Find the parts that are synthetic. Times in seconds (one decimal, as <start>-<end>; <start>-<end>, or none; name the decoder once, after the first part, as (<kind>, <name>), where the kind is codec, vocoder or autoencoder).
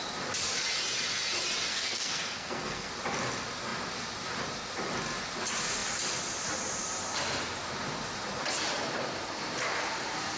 1.7-2.9 (codec, SNAC)